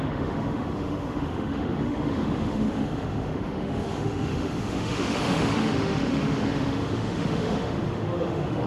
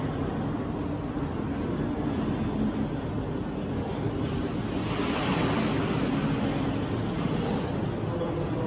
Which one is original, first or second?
second